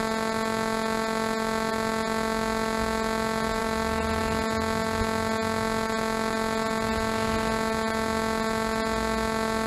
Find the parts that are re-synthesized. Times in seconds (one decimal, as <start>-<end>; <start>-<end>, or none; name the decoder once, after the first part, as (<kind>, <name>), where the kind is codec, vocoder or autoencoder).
3.6-4.2 (vocoder, BigVGAN v2)